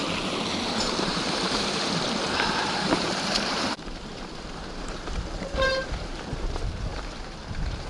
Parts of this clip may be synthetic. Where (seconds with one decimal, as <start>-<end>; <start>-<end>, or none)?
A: 0.0-7.9